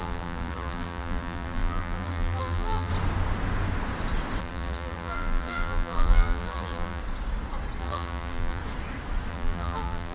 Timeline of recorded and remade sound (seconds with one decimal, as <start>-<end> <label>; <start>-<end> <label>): 0.0-2.9 remade; 2.9-4.4 recorded; 4.4-7.0 remade; 7.0-7.8 recorded; 7.8-8.6 remade; 8.6-9.3 recorded; 9.3-10.1 remade